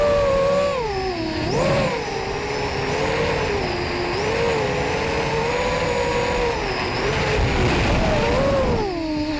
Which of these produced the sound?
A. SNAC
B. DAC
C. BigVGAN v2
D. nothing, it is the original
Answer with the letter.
D